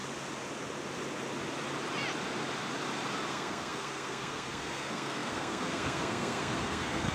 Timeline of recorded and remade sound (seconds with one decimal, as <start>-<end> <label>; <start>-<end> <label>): 0.0-3.3 recorded; 3.3-7.1 remade